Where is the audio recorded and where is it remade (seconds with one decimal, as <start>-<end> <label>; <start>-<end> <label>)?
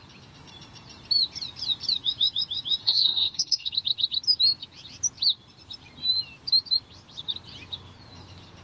0.0-2.8 recorded; 2.8-3.7 remade; 3.7-8.6 recorded